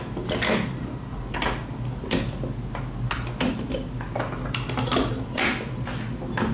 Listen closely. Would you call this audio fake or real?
real